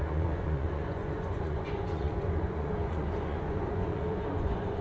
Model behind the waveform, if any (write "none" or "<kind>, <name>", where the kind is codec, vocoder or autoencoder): vocoder, Vocos